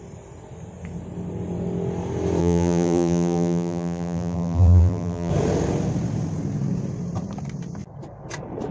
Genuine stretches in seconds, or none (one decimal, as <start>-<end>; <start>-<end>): 0.0-2.4; 5.3-8.7

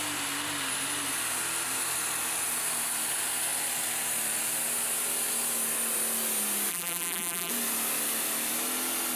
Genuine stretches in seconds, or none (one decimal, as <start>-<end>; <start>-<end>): 0.0-6.7; 7.5-9.2

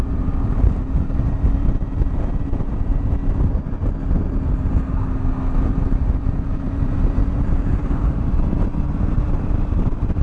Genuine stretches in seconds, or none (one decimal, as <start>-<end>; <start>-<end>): 2.9-5.7

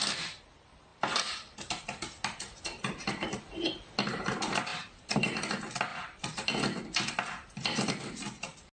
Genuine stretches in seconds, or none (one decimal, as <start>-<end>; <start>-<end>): 0.0-0.9; 1.6-5.9; 8.1-8.8

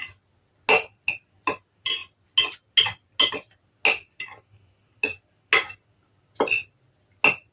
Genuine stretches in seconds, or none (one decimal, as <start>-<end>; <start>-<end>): 0.0-7.5

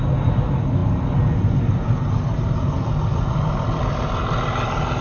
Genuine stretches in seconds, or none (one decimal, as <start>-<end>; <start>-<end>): 0.0-5.0